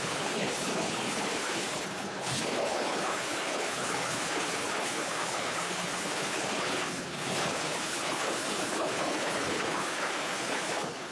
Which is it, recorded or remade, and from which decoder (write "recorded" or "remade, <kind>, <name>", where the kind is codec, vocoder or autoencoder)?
remade, codec, HILCodec